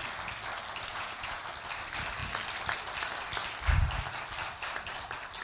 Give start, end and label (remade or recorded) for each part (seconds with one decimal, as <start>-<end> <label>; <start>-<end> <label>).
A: 0.0-0.9 recorded; 0.9-1.4 remade; 1.4-5.4 recorded